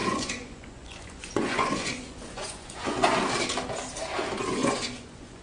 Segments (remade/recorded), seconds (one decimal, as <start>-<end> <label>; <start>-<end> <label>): 0.0-3.2 remade; 3.2-4.5 recorded; 4.5-5.4 remade